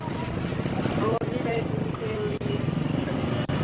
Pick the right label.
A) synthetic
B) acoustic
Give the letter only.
B